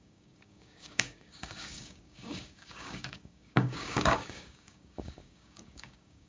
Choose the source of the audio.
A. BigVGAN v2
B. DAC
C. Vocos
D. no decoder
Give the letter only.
B